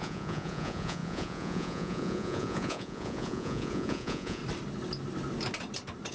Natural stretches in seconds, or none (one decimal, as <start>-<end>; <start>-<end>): 4.4-6.1